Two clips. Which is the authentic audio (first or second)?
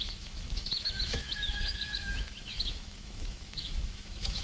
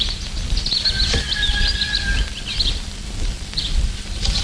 second